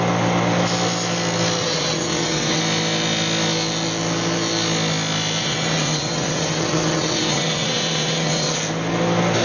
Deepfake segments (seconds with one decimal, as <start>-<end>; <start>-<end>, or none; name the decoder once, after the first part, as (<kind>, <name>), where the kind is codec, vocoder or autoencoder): 1.6-2.6 (vocoder, WaveNeXt); 5.4-8.6